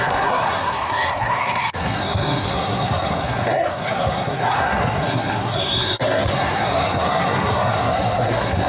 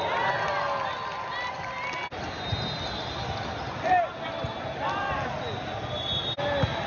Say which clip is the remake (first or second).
first